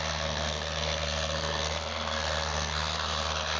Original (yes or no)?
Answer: no